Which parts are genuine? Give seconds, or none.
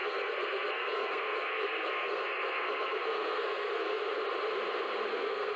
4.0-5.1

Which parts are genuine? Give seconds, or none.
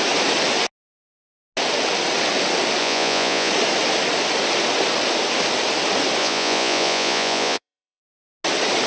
0.0-2.8; 3.5-6.2; 8.0-8.9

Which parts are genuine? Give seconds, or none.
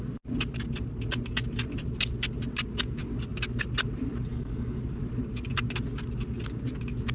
0.0-4.3; 4.8-7.1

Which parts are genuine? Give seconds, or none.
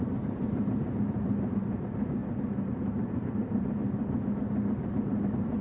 3.8-5.1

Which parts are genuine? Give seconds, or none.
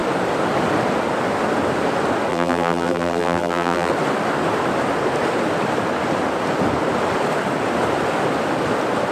0.0-2.3; 3.9-9.1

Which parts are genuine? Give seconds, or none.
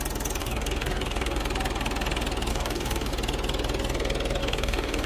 0.0-0.4; 1.4-2.5; 3.1-4.4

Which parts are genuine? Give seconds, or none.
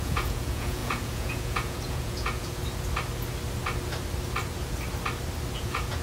2.6-5.5